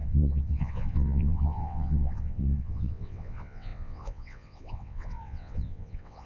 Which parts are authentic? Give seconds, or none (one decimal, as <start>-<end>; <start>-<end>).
none

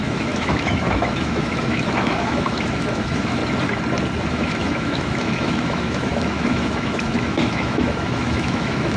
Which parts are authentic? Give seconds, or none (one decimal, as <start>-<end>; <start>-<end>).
3.4-4.3

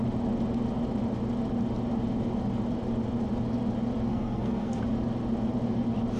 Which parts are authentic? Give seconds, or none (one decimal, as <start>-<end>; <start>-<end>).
0.0-4.1; 4.8-6.2

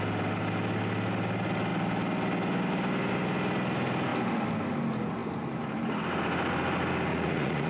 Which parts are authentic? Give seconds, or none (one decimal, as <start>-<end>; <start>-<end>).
0.0-7.1